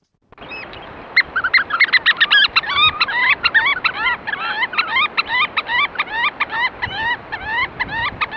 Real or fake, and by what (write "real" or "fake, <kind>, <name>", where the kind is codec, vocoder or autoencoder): real